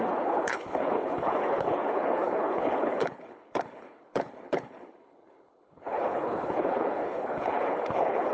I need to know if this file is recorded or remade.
remade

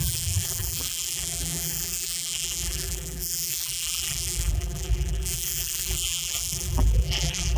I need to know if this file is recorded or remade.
remade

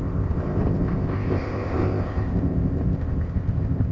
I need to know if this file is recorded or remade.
remade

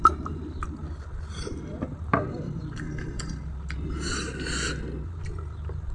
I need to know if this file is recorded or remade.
remade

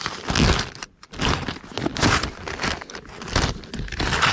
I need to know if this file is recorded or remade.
recorded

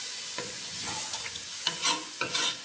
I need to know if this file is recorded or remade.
remade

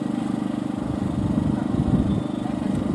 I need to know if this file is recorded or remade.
recorded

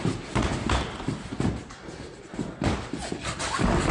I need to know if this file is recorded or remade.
recorded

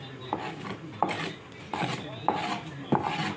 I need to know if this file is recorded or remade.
recorded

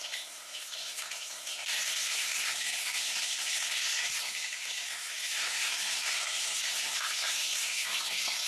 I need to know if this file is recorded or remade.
remade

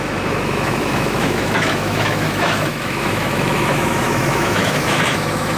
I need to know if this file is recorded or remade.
remade